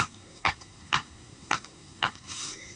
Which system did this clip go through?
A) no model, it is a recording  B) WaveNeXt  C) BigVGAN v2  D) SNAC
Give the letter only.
D